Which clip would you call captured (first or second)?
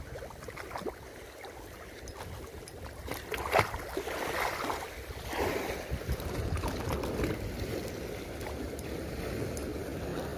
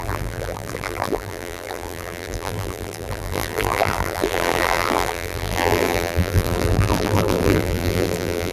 first